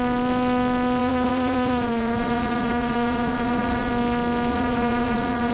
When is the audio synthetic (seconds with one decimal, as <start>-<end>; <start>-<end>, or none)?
1.0-3.9; 4.5-5.5